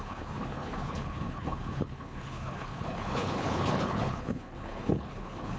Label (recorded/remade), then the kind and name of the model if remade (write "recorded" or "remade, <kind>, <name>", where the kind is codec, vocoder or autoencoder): remade, codec, HILCodec